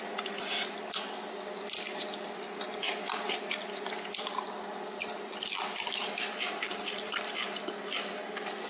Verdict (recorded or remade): recorded